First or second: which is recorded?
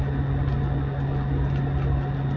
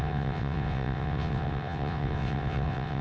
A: first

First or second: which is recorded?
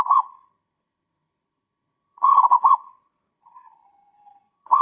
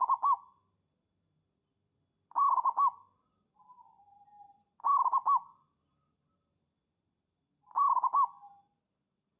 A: second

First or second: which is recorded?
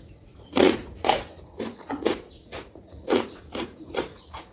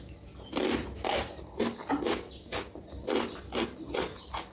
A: second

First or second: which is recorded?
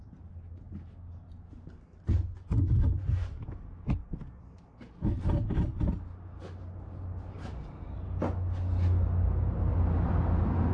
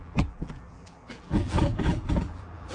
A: first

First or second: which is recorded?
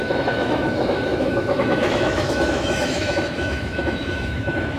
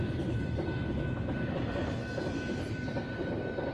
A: second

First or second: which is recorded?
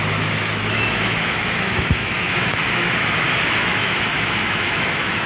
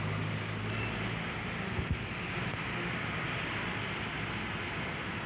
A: second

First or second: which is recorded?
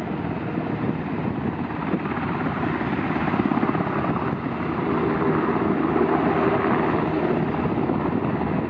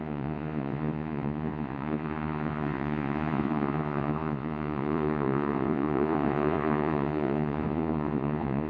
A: first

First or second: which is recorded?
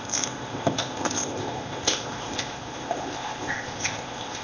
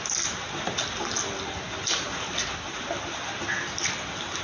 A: second